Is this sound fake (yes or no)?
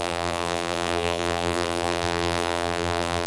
yes